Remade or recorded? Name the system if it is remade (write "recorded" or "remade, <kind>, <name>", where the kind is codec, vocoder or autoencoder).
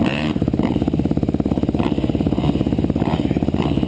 remade, vocoder, BigVGAN v2